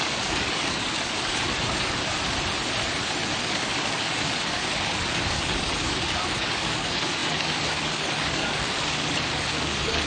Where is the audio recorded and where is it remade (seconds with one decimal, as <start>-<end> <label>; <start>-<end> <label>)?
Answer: 0.0-2.1 remade; 2.1-3.4 recorded; 3.4-10.1 remade